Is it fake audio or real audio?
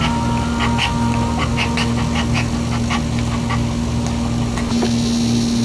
real